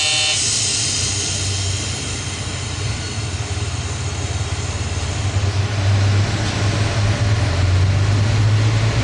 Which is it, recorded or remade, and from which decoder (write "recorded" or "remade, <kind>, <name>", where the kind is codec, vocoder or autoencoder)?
recorded